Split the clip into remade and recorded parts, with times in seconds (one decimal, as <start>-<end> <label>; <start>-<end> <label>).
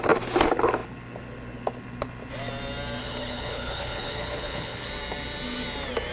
0.0-3.0 recorded; 3.0-4.9 remade; 4.9-6.1 recorded